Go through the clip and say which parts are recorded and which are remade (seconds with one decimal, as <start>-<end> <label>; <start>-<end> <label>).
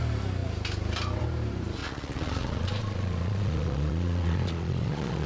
0.0-1.8 recorded; 1.8-5.3 remade